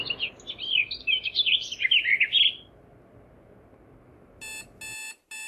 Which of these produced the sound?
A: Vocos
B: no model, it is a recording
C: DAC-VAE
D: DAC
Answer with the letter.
B